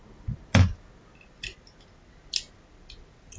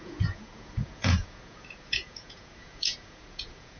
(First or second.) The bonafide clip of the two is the first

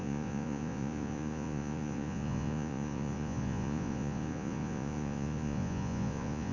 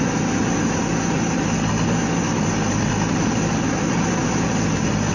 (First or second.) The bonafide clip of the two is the second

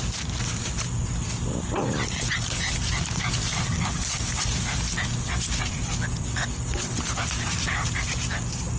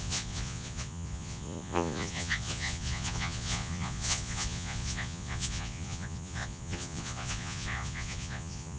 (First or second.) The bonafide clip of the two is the first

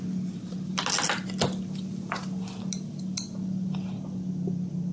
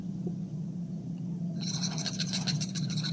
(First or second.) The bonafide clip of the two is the first